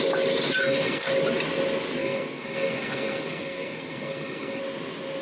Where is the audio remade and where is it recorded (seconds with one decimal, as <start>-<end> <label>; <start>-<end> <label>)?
0.0-0.6 recorded; 0.6-1.1 remade; 1.1-2.0 recorded; 2.0-4.6 remade; 4.6-5.2 recorded